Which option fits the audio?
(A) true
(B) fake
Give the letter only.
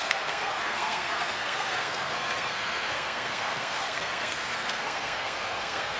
B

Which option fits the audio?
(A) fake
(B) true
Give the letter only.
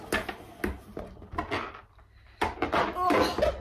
B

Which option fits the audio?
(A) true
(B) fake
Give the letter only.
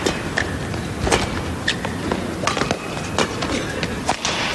A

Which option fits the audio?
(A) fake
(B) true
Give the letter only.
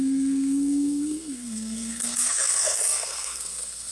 A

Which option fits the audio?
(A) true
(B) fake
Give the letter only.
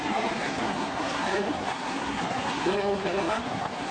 B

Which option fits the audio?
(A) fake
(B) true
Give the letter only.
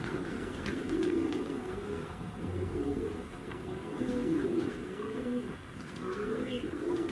A